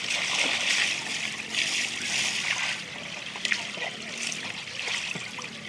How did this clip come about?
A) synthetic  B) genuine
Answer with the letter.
B